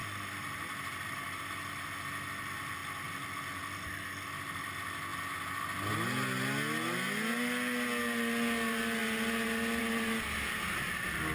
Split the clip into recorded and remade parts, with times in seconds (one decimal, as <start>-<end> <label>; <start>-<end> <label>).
0.0-11.3 recorded